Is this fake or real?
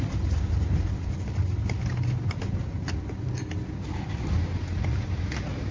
real